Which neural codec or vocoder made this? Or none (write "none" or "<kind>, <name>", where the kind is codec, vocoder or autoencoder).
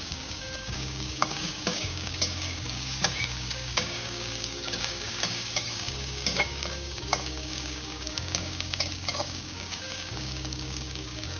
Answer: codec, DAC